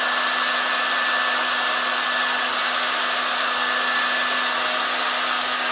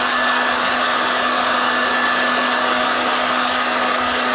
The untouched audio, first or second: first